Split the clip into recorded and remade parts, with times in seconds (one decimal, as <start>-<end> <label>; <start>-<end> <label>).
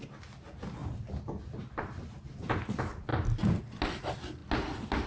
0.0-0.8 recorded; 0.8-2.6 remade; 2.6-5.1 recorded